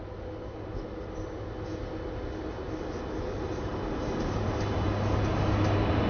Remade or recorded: recorded